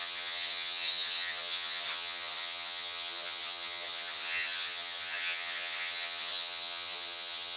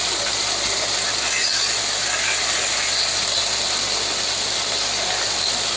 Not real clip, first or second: first